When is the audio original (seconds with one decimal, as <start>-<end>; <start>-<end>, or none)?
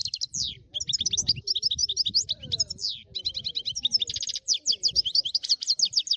0.0-6.2